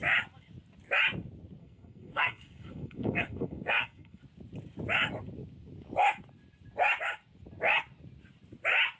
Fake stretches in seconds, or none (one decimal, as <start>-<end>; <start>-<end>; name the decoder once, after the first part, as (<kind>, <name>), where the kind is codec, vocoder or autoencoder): 1.6-4.2 (codec, SNAC)